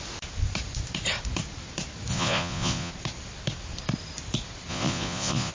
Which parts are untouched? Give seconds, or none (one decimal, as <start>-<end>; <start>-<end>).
0.0-2.1; 2.9-4.7